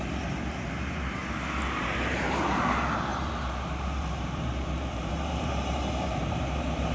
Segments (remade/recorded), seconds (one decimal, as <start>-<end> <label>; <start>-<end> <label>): 0.0-1.2 remade; 1.2-1.7 recorded; 1.7-6.9 remade